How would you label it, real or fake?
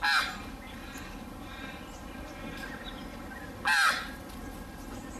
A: real